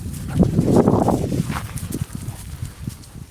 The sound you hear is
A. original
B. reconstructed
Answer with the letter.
A